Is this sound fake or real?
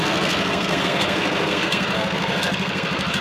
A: fake